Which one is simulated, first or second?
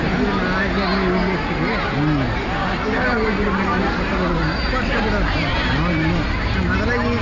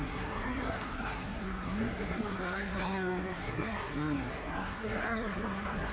second